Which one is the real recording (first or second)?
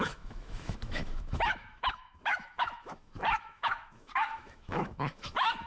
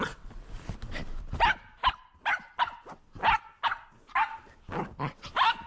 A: second